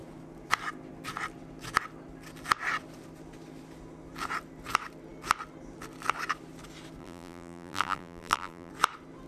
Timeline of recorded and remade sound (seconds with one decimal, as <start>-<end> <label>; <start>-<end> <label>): 0.0-7.0 recorded; 7.0-8.7 remade; 8.7-9.3 recorded